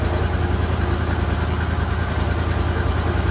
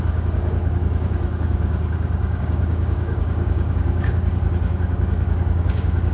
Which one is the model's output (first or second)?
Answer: second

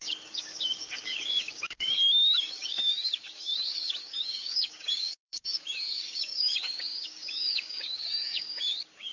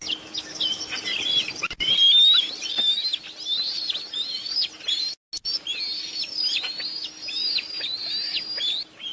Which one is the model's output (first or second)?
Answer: first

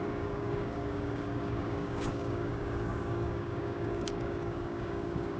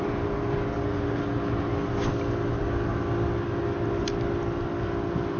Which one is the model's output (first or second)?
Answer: first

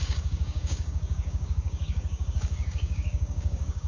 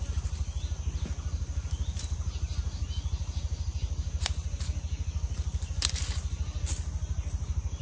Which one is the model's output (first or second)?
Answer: first